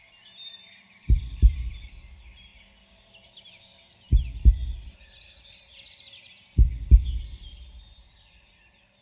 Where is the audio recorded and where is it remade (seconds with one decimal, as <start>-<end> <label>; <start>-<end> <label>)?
0.0-2.5 remade; 2.5-7.8 recorded; 7.8-9.0 remade